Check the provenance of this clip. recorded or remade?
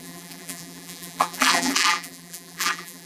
remade